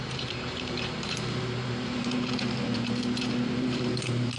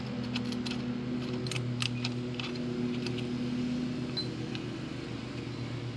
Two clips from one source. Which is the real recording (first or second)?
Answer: second